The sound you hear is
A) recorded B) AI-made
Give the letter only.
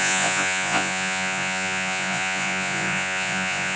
B